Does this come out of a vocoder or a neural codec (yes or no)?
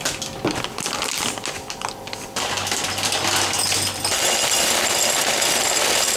no